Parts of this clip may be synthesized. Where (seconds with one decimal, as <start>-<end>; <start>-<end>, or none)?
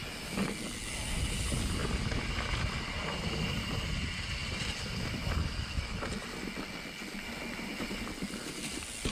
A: 4.4-5.8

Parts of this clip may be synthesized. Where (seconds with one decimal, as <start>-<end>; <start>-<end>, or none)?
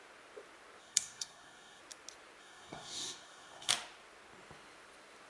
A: 0.8-1.8; 2.4-3.7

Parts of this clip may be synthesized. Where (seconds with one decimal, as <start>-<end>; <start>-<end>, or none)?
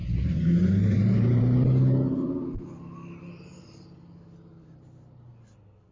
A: 0.0-2.7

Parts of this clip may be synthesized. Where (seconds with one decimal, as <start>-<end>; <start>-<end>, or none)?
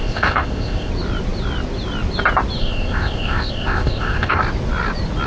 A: 0.0-0.9; 2.6-4.4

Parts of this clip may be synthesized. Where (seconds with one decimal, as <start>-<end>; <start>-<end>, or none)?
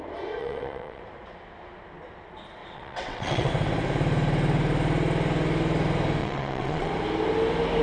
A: 0.4-1.0; 2.6-3.5; 6.2-6.9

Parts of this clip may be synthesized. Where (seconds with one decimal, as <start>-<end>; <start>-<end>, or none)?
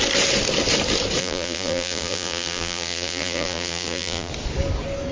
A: 1.2-4.3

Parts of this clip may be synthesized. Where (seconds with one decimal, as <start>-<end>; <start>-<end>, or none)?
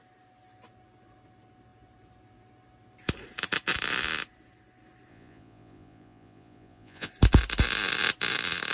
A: 5.1-7.1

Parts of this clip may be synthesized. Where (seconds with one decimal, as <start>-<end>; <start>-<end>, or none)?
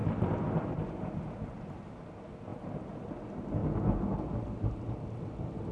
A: 0.0-2.0; 2.5-3.1